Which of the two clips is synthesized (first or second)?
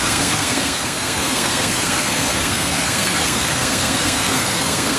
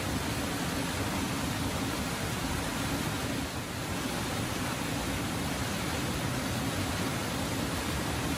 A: first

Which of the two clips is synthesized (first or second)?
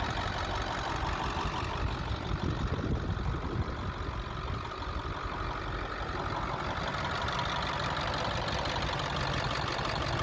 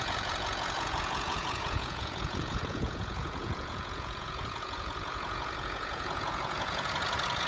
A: second